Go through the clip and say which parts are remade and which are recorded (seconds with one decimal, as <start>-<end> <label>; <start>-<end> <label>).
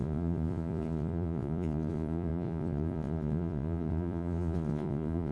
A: 0.0-5.3 remade